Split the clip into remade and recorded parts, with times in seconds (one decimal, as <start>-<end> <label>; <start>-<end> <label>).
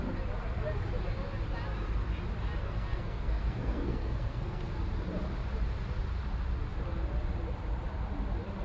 0.0-2.6 recorded; 2.6-4.8 remade; 4.8-8.6 recorded